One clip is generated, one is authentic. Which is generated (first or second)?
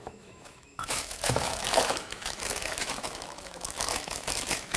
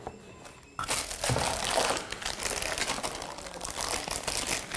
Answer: first